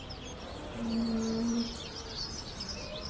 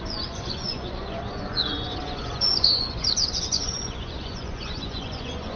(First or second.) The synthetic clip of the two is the second